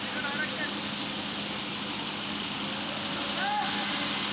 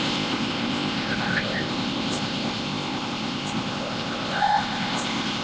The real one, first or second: first